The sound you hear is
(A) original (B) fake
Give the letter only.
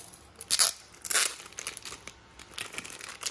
A